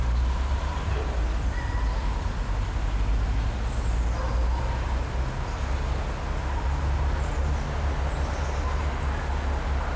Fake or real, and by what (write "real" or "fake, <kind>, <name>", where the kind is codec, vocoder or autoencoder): real